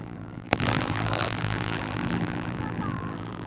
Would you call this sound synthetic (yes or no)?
yes